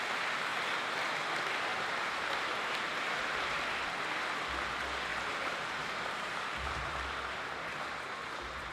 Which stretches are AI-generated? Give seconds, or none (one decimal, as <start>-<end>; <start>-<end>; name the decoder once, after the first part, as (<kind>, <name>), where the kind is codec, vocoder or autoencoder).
1.7-3.6 (vocoder, BigVGAN v2); 5.1-8.7